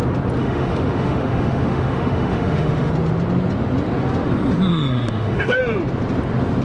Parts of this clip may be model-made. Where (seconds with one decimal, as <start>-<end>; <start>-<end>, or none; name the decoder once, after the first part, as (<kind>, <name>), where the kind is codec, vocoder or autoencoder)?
0.4-2.9 (autoencoder, DAC-VAE); 4.7-5.6